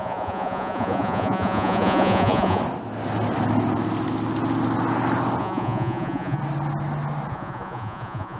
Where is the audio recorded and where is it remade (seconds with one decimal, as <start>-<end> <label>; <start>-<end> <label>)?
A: 0.0-2.6 remade; 2.6-5.4 recorded; 5.4-6.4 remade; 6.4-7.3 recorded; 7.3-8.4 remade